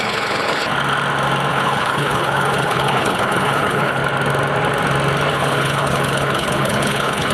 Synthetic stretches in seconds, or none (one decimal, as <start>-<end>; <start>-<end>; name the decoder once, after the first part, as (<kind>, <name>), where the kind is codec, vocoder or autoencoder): 0.0-0.7 (codec, HILCodec); 1.5-4.0; 5.3-7.3